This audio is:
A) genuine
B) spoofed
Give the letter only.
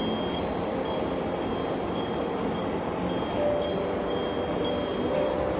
A